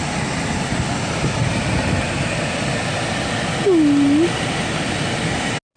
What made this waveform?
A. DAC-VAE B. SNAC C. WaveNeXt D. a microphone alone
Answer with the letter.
D